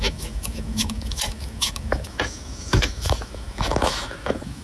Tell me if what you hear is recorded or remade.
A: remade